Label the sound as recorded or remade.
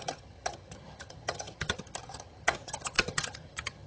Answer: remade